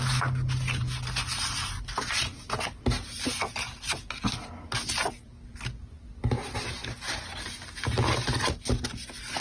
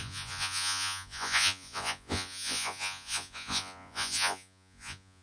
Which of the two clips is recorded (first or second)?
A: first